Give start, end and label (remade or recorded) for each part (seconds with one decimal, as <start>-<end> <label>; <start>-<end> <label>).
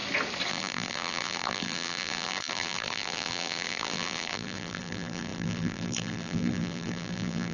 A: 0.0-0.5 recorded; 0.5-7.5 remade